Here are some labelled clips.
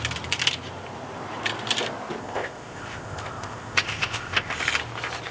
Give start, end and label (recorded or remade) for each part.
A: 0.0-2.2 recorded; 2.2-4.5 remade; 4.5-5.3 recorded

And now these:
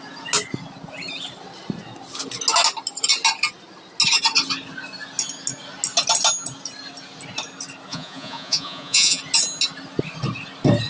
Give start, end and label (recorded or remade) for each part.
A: 0.0-7.9 recorded; 7.9-9.2 remade; 9.2-10.9 recorded

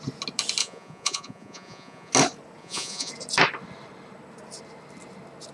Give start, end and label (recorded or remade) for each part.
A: 0.0-0.6 recorded; 0.6-2.1 remade; 2.1-2.6 recorded; 2.6-3.1 remade; 3.1-5.5 recorded

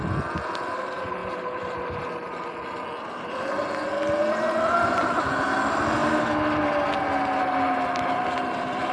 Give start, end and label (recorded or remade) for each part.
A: 0.0-8.9 recorded